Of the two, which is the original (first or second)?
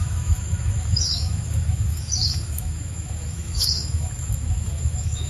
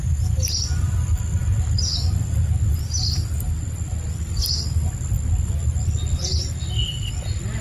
second